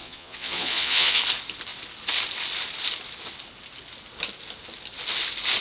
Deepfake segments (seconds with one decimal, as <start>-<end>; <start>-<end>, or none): 0.0-1.2